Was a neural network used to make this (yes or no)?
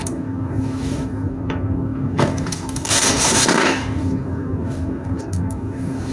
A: yes